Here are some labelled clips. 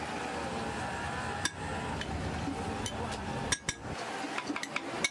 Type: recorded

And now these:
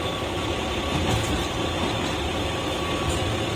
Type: recorded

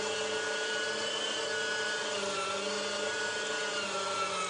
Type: recorded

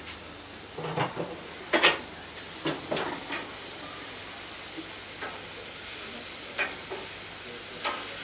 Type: recorded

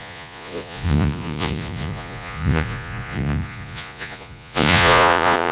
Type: remade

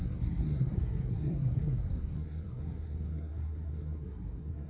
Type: remade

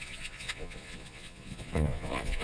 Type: remade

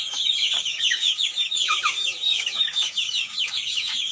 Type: remade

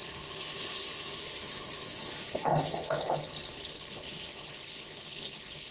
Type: remade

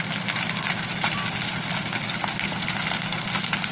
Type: recorded